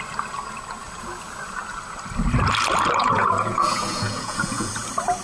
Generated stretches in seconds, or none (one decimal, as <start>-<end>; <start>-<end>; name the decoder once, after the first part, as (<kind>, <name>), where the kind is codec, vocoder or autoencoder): 3.0-4.7 (vocoder, Vocos)